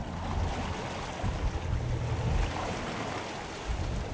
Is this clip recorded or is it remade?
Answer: recorded